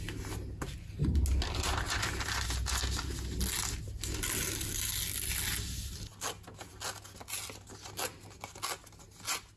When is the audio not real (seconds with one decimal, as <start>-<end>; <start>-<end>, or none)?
none